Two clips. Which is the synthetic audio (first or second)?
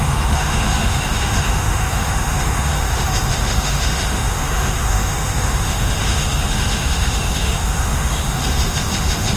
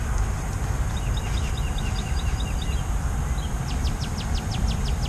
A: first